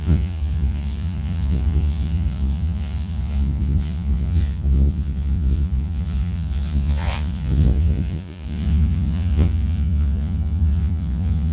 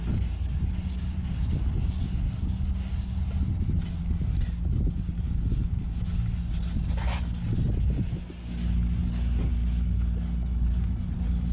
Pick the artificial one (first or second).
first